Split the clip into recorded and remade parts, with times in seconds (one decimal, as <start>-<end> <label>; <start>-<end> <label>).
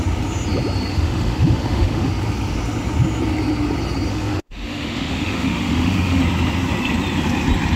0.0-0.9 recorded; 0.9-2.1 remade; 2.1-4.1 recorded; 4.1-6.2 remade; 6.2-7.8 recorded